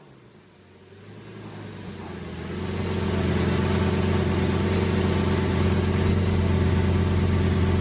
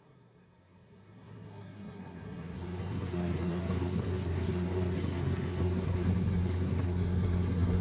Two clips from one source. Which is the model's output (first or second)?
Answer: second